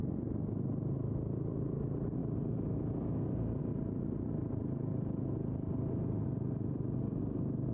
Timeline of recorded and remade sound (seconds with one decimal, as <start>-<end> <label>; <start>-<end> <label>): 0.0-7.7 recorded